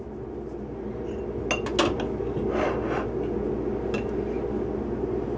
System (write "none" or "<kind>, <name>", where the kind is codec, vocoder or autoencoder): none